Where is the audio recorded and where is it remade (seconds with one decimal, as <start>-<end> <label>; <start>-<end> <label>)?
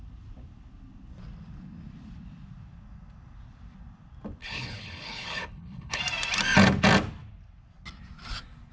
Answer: 0.0-4.4 recorded; 4.4-6.0 remade; 6.0-8.7 recorded